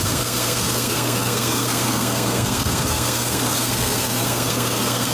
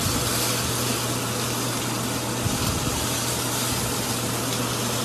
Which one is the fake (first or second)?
first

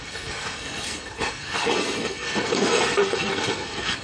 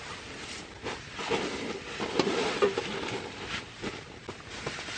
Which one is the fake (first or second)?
first